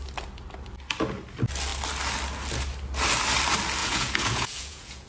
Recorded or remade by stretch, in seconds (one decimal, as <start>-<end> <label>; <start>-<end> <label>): 0.0-3.8 recorded; 3.8-5.1 remade